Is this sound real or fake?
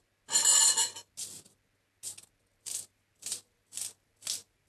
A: real